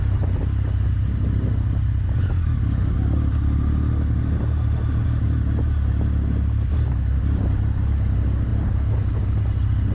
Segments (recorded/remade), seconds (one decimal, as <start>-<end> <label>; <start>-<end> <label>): 0.0-9.9 recorded